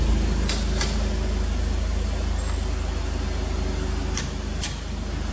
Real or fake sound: real